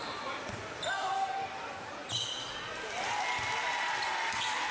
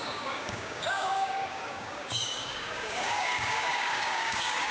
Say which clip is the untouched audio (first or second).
first